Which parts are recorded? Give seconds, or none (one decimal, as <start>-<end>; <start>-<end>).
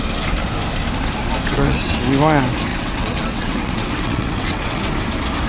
0.0-1.5; 2.0-2.7; 4.8-5.5